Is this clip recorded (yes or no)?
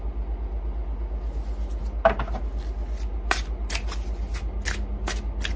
yes